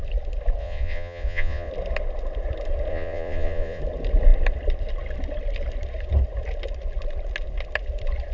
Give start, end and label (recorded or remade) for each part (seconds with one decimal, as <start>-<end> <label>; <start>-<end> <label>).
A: 0.0-0.6 recorded; 0.6-1.7 remade; 1.7-2.9 recorded; 2.9-3.8 remade; 3.8-8.3 recorded